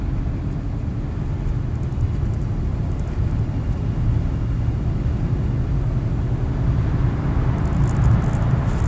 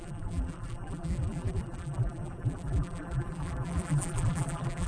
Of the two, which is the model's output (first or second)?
second